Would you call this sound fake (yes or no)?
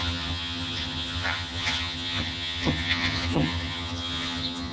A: yes